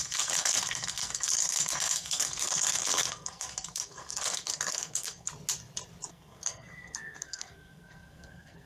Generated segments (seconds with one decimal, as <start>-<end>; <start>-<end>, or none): 0.0-5.3; 6.1-8.7